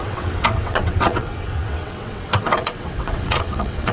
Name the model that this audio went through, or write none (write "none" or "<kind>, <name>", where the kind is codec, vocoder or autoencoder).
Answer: vocoder, WaveNeXt